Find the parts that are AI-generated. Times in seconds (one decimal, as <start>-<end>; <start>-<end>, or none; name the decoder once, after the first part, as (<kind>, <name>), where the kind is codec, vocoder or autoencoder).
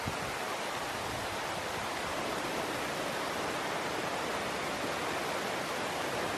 2.1-2.6 (vocoder, BigVGAN v2)